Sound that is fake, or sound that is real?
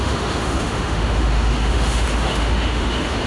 fake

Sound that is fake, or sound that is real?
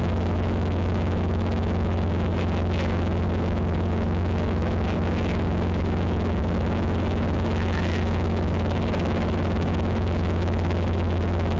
fake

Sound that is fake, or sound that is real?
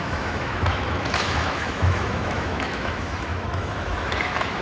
fake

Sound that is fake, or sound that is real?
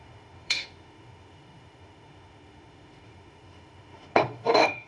fake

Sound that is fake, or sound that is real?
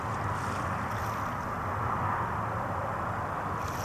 real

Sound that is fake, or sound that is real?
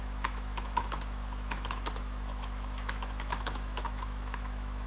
fake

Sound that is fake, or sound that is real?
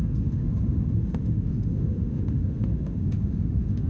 fake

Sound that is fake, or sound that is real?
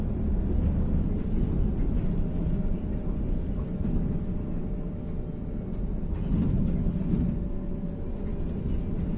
real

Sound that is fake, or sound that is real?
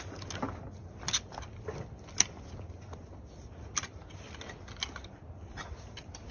real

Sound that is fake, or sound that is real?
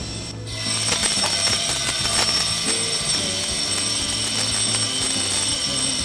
real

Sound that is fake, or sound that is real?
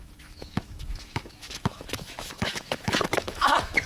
fake